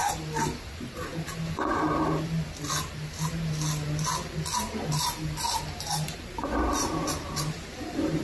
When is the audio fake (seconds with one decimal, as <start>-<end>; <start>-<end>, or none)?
none